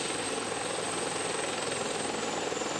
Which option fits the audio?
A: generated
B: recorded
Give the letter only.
B